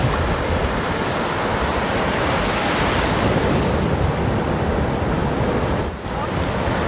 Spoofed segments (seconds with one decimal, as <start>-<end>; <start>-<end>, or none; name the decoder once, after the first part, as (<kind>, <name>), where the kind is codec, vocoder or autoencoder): none